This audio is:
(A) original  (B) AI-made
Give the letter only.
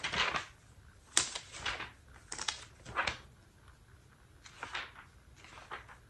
A